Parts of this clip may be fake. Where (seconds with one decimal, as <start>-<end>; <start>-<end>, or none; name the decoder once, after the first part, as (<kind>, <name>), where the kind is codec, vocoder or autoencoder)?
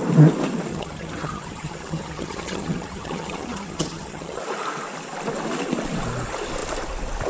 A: 0.7-4.4 (vocoder, HiFi-GAN)